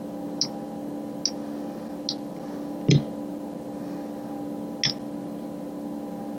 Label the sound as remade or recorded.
recorded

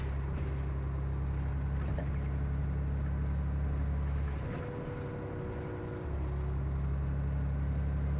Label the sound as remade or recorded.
recorded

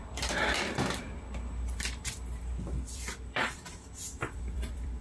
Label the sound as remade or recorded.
remade